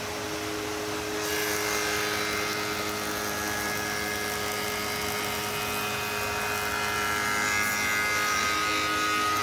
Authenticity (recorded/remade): recorded